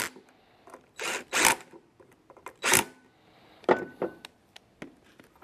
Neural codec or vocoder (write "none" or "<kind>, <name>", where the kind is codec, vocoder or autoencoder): none